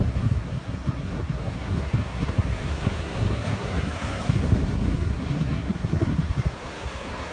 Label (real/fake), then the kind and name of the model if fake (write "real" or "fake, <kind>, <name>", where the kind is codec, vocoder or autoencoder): fake, codec, SNAC